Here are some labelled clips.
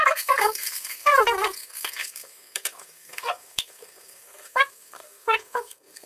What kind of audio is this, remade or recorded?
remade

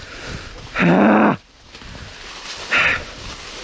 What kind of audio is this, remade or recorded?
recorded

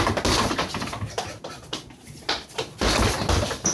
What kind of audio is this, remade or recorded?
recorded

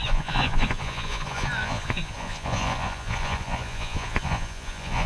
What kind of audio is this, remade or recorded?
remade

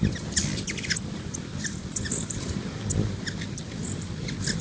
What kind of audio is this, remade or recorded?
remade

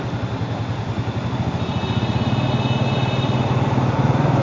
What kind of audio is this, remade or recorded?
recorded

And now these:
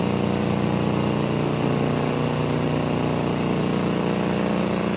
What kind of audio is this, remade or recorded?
recorded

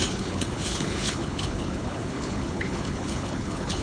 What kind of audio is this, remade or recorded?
remade